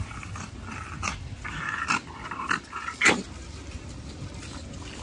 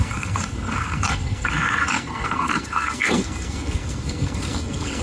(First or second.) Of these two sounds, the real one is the first